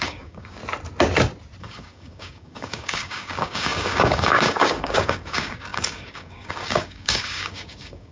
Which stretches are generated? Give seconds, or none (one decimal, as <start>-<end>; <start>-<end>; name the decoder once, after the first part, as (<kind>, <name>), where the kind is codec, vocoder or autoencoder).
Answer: 0.0-0.6 (codec, DAC); 1.6-8.1